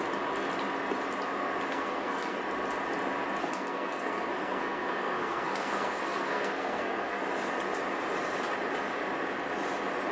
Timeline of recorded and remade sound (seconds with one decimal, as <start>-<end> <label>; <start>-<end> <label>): 0.0-1.7 recorded; 1.7-2.4 remade; 2.4-3.4 recorded; 3.4-7.2 remade; 7.2-10.1 recorded